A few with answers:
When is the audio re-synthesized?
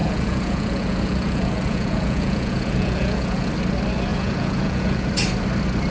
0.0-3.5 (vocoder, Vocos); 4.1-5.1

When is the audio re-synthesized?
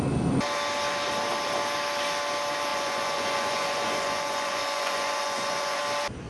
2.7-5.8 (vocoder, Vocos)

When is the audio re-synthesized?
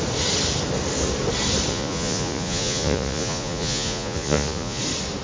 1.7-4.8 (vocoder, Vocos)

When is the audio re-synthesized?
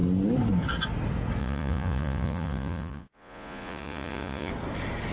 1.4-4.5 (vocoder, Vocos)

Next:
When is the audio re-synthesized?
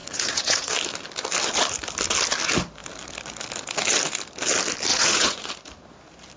0.0-0.7 (vocoder, Vocos); 4.9-5.4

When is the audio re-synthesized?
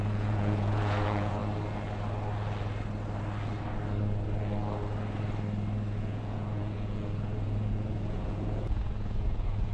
0.0-1.4 (vocoder, Vocos); 6.0-9.7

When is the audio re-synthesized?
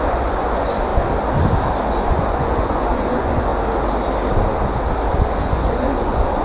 0.0-0.9 (vocoder, Vocos); 1.9-3.5; 5.1-6.4